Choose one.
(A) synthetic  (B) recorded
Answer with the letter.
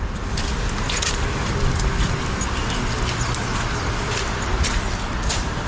B